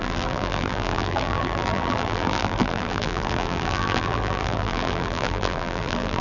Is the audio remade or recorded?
remade